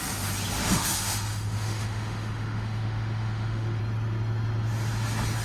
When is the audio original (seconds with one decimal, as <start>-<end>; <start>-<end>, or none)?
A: 0.0-0.6; 3.8-5.4